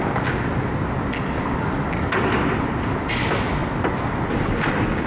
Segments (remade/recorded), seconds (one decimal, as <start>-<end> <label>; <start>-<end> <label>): 0.0-5.1 recorded